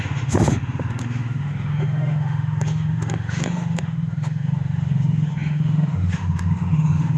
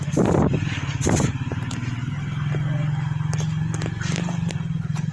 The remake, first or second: first